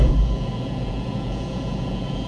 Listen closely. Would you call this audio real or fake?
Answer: fake